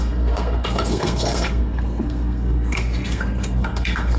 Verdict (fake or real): fake